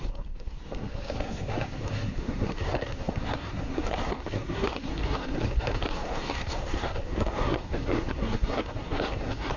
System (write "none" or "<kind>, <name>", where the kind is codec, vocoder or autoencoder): codec, SNAC